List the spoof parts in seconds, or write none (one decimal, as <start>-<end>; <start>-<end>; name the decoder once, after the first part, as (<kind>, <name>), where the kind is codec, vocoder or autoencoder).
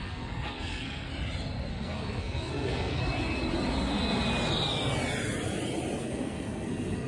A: 0.0-1.1 (codec, SNAC); 1.7-3.0; 6.0-7.1